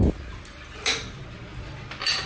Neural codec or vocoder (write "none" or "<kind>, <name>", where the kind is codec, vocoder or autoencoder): none